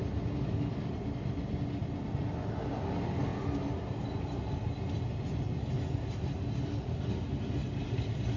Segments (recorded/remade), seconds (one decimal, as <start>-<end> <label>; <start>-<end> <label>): 0.0-8.4 recorded